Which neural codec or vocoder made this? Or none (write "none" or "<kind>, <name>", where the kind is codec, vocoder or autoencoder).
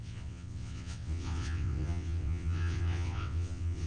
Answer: vocoder, WaveNeXt